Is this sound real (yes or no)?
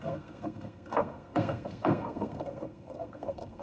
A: no